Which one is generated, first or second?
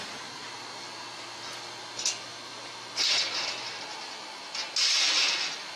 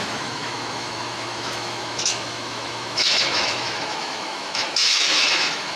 second